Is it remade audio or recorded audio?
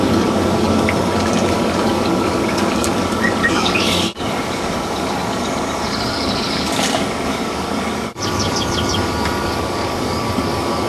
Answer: remade